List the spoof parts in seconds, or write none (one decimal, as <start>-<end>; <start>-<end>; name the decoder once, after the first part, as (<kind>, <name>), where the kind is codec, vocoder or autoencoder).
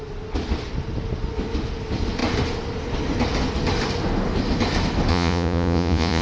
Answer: 5.1-6.2 (vocoder, Vocos)